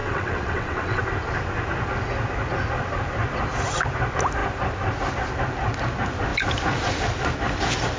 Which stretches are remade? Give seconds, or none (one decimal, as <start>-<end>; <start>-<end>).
0.0-1.0